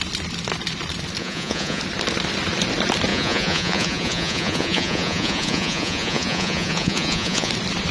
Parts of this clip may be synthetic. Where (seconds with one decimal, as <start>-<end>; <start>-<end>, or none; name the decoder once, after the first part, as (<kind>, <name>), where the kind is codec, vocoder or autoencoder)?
1.2-1.8 (vocoder, Vocos); 3.1-7.5